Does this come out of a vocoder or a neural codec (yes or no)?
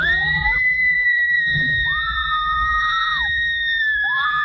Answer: yes